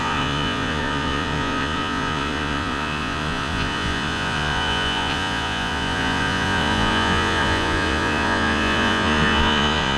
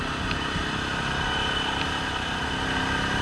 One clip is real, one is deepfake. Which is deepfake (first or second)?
first